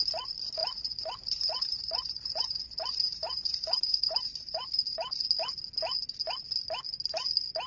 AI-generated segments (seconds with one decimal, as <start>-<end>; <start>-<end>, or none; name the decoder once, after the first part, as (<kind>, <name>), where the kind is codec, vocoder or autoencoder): 0.6-5.2 (vocoder, BigVGAN v2)

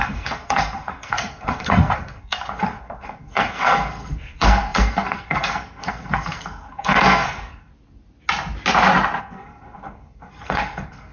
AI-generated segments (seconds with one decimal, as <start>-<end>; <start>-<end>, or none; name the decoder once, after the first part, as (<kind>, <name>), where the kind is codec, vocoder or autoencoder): 0.0-7.7 (codec, SNAC); 9.2-11.1

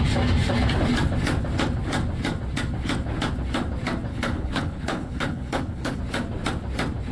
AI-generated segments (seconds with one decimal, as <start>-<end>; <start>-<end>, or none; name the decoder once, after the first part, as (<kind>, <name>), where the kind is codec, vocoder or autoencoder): 4.1-6.0 (codec, HILCodec)